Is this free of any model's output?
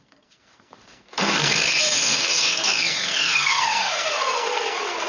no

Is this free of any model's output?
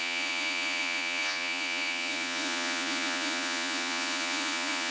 no